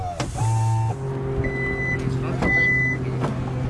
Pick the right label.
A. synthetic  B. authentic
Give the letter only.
B